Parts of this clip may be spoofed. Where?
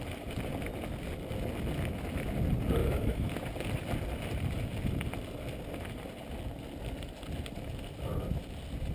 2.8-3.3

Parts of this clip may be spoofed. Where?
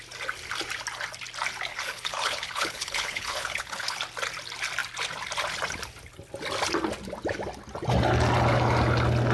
1.7-4.0